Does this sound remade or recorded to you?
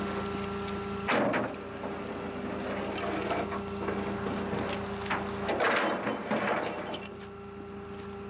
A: recorded